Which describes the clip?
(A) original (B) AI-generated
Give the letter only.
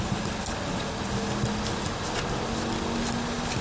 A